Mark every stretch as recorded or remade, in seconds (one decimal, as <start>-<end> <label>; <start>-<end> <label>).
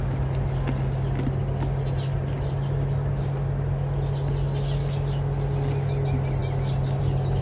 0.0-7.4 recorded